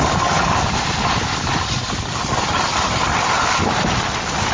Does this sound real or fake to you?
real